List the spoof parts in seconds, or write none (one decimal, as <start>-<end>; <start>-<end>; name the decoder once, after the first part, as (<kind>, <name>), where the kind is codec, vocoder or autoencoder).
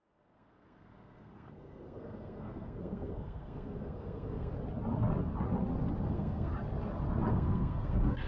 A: 0.0-4.5 (codec, SNAC); 6.1-6.5; 7.3-8.3